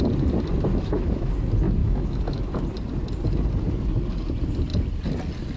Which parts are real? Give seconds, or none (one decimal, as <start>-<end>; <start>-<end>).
0.0-0.7; 1.3-1.8; 2.5-5.6